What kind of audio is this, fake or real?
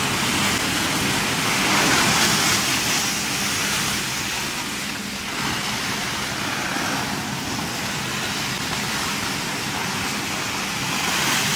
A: real